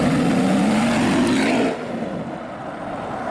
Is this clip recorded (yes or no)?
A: yes